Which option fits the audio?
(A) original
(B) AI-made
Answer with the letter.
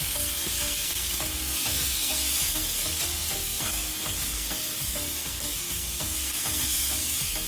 B